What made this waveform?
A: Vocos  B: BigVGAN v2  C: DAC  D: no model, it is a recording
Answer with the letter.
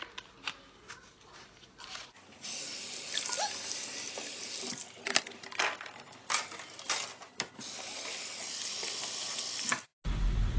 D